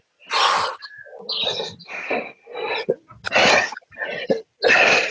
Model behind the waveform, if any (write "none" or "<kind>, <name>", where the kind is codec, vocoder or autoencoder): none